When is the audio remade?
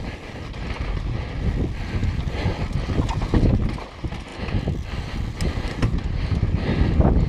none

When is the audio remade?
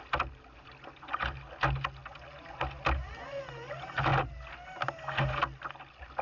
none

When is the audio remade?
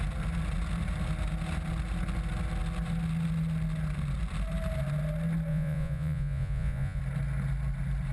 5.5-7.0 (vocoder, Vocos)